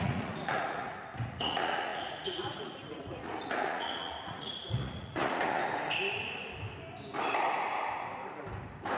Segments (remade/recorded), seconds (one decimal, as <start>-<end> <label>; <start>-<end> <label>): 0.0-5.6 remade; 5.6-9.0 recorded